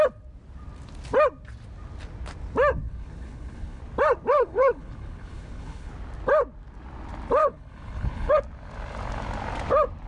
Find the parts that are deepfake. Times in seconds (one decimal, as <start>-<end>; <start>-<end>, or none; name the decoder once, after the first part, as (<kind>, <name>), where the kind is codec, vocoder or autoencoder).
2.8-3.8 (codec, HILCodec); 4.3-5.9; 7.4-8.3